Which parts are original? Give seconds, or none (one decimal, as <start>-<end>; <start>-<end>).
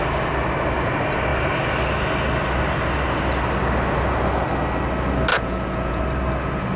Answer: 0.0-5.3; 6.0-6.8